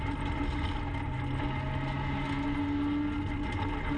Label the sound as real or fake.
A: real